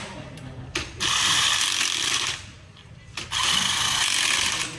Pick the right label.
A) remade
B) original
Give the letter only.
B